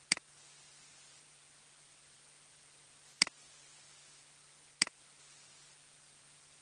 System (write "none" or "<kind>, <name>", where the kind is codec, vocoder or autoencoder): none